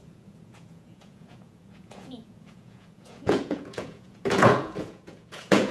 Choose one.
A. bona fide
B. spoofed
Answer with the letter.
B